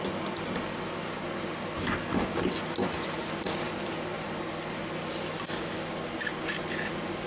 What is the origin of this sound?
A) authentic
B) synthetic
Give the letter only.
A